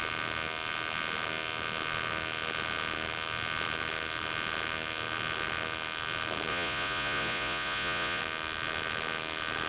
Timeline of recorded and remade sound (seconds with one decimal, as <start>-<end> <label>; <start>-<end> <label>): 0.0-6.5 recorded; 6.5-8.2 remade; 8.2-9.7 recorded